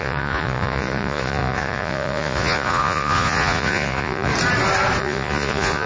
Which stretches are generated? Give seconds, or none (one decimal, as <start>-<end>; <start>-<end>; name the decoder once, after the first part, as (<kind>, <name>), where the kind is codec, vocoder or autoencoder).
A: 0.0-4.3 (vocoder, Vocos); 5.0-5.9